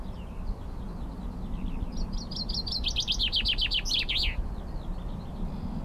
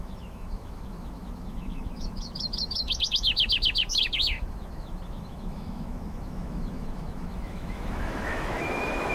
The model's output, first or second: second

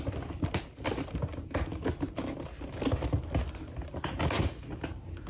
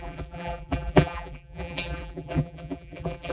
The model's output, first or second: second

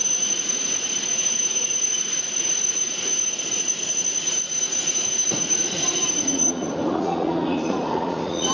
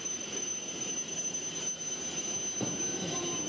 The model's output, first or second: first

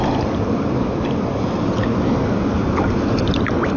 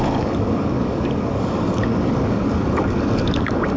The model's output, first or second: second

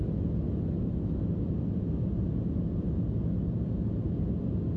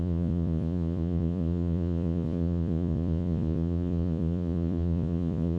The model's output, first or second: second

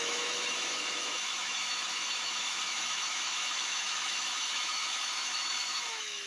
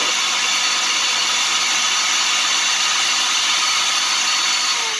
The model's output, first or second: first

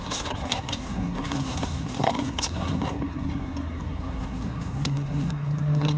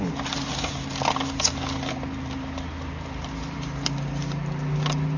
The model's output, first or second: first